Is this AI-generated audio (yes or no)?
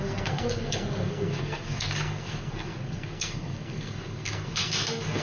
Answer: yes